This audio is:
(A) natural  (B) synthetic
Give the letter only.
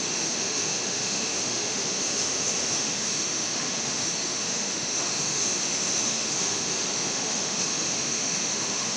B